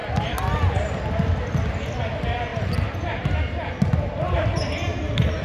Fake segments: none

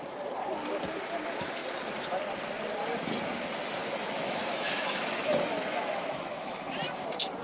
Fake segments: 3.8-6.6 (autoencoder, DAC-VAE)